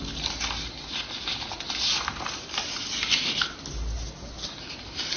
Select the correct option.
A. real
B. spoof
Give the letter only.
A